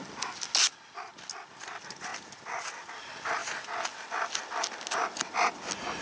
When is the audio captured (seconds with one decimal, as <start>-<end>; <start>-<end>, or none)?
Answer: 0.0-6.0